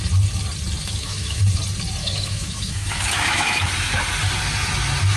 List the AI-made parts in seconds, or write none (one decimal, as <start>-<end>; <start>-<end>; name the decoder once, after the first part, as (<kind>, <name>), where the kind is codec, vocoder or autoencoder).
0.8-1.4 (autoencoder, DAC-VAE); 2.0-3.7